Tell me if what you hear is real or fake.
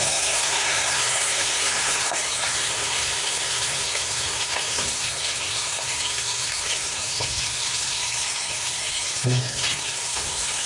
fake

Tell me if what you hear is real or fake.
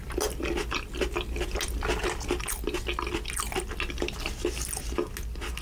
real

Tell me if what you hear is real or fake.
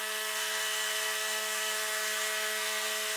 fake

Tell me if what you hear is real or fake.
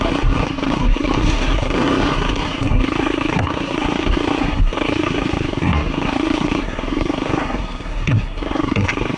fake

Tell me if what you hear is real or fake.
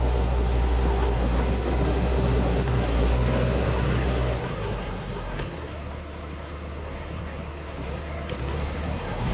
fake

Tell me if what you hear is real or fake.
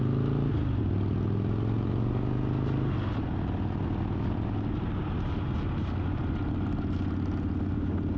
real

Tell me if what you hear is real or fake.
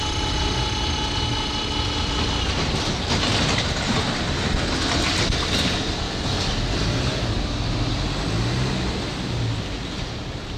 real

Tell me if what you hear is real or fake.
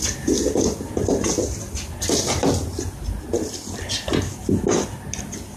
real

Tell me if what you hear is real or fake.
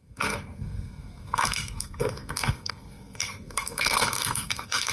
fake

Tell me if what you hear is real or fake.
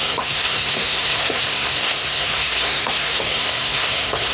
fake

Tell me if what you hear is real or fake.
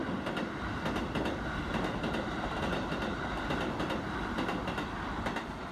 real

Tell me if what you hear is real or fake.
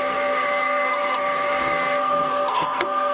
fake